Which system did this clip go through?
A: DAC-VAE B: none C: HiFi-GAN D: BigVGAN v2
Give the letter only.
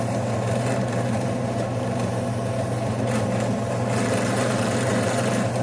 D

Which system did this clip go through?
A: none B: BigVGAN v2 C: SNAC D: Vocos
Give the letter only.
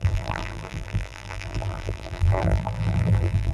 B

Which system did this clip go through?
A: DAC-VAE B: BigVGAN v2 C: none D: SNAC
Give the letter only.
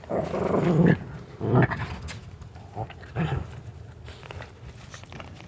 C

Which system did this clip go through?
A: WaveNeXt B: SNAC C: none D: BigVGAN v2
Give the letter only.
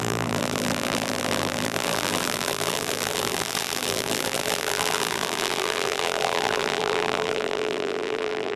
D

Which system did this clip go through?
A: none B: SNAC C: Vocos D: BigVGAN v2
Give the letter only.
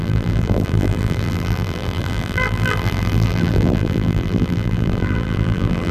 D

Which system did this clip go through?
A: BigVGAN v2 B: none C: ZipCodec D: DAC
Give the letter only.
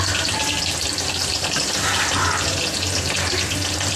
A